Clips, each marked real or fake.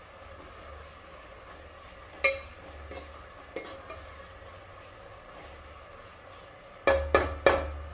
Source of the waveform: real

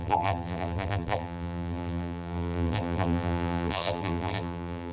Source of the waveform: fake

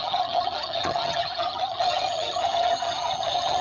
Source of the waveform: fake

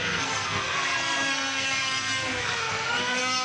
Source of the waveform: fake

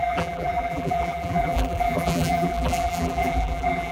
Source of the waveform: fake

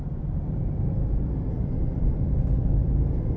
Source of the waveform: fake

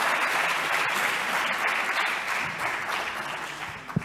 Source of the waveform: real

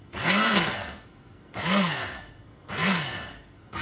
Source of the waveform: fake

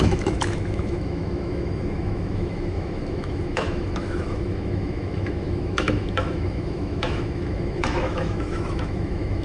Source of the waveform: fake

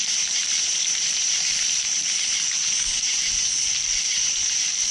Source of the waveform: fake